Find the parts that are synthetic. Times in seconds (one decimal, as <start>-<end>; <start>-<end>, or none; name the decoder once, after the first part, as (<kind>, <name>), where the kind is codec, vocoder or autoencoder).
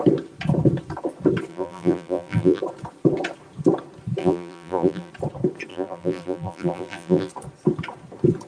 1.5-2.6 (vocoder, BigVGAN v2); 4.2-5.1; 5.7-7.3